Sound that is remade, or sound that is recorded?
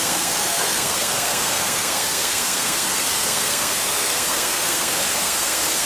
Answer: remade